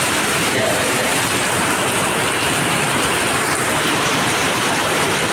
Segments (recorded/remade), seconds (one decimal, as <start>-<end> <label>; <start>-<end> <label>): 0.0-1.1 remade; 1.1-3.8 recorded; 3.8-5.3 remade